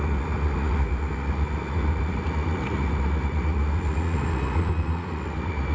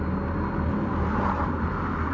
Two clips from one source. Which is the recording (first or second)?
second